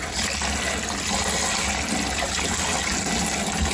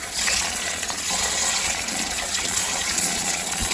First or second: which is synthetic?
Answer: second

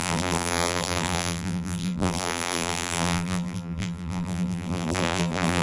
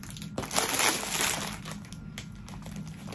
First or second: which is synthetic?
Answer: first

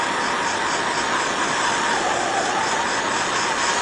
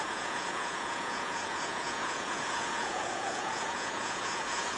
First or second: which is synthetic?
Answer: second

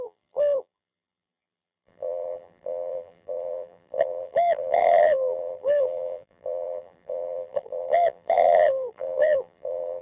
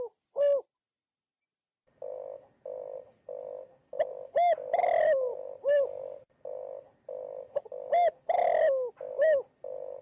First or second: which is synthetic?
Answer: first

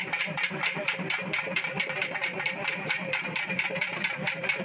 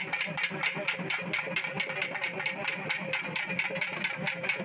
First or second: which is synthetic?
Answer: first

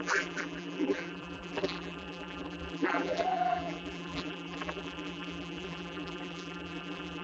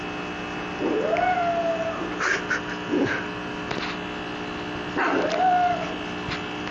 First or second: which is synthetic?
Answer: first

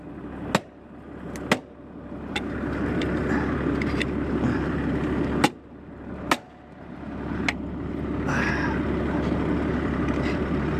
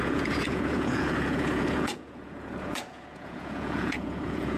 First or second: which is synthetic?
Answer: second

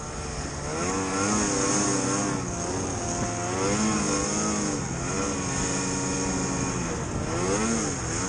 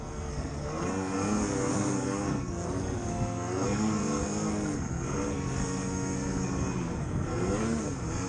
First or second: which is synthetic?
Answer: second